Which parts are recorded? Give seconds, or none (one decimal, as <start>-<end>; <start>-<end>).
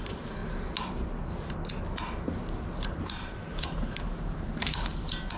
0.4-2.8